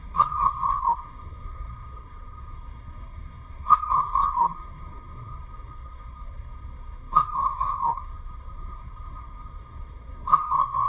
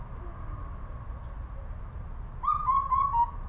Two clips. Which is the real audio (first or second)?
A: second